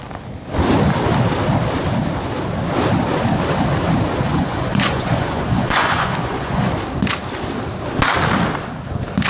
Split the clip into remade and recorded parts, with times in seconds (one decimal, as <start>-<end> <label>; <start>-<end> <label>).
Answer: 0.0-4.3 recorded; 4.3-6.6 remade; 6.6-9.3 recorded